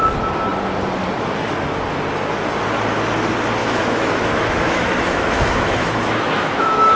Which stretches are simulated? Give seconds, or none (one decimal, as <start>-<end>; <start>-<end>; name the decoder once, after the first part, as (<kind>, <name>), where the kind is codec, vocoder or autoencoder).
3.6-7.0 (autoencoder, DAC-VAE)